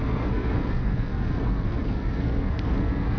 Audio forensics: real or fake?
fake